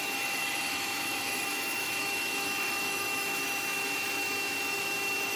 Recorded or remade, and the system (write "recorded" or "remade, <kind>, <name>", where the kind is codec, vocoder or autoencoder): remade, autoencoder, DAC-VAE